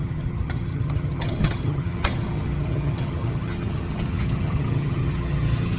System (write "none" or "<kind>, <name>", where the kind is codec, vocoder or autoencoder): vocoder, HiFi-GAN